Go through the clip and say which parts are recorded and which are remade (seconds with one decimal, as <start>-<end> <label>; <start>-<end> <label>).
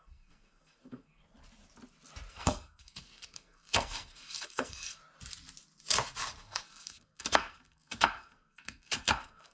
0.0-1.2 remade; 1.2-2.3 recorded; 2.3-5.0 remade; 5.0-6.4 recorded; 6.4-9.5 remade